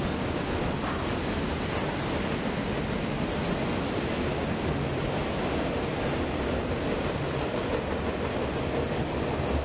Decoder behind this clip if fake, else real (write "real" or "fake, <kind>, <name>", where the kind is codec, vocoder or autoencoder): real